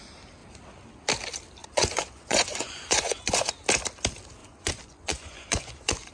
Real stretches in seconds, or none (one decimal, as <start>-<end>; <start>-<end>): 0.0-1.6; 3.5-4.4

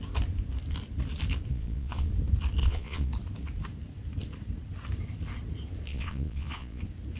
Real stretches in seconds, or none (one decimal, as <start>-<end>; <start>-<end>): 0.0-1.5; 2.1-2.6; 3.1-5.9; 6.8-7.2

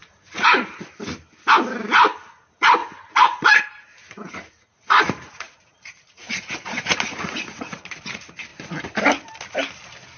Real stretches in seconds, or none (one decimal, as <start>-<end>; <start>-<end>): 0.7-2.8; 3.6-4.0; 8.0-10.2